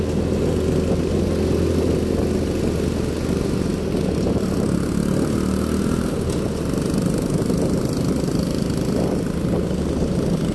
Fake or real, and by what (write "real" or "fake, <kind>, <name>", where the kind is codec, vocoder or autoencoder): real